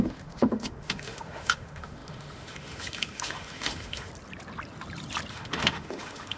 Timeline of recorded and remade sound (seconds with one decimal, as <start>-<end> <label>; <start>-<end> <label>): 0.0-4.1 remade; 4.1-5.3 recorded; 5.3-6.4 remade